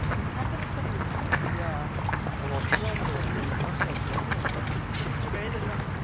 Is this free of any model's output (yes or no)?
yes